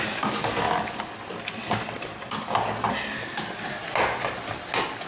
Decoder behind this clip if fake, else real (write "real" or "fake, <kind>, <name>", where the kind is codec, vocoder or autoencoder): real